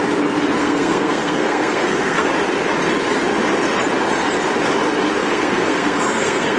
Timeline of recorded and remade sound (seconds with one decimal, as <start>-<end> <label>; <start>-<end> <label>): 0.0-0.6 recorded; 0.6-2.3 remade; 2.3-5.2 recorded; 5.2-6.6 remade